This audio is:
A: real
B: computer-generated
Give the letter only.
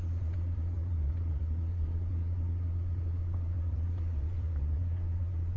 B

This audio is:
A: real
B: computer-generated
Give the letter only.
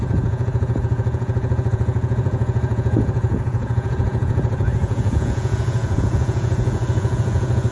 B